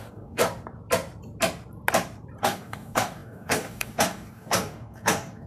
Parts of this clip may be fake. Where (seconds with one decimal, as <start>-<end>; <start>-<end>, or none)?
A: 0.0-0.4; 2.4-5.5